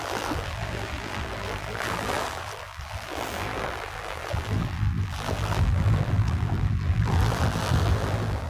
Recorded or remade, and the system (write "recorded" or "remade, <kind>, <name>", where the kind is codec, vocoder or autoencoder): remade, vocoder, BigVGAN v2